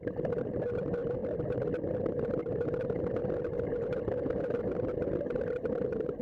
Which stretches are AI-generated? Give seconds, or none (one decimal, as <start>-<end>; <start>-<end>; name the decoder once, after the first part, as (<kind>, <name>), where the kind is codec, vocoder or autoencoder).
none